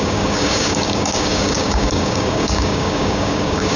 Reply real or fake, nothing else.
fake